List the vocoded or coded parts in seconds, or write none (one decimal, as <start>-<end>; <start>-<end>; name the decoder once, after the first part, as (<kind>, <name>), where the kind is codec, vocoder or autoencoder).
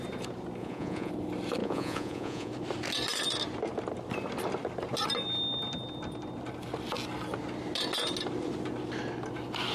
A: 0.6-1.1 (vocoder, Vocos); 1.6-2.5